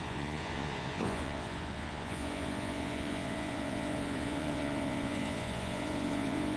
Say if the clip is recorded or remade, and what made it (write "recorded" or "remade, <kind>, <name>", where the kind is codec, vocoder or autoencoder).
remade, vocoder, Vocos